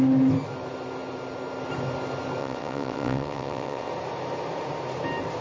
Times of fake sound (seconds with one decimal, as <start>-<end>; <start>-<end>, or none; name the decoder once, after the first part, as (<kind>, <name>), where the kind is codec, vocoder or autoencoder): 2.4-3.9 (vocoder, WaveNeXt)